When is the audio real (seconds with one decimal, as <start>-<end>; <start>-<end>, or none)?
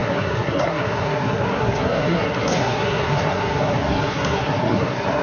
none